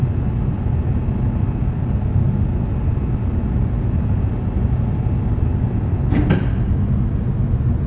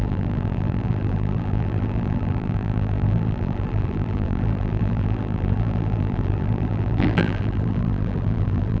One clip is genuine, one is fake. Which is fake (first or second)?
second